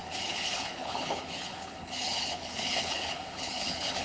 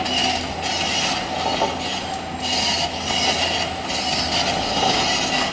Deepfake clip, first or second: first